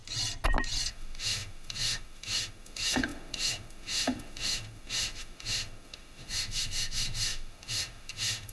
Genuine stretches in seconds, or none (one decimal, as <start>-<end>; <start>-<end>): 0.0-0.9